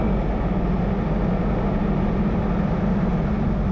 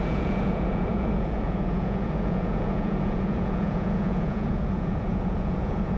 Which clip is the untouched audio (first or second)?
first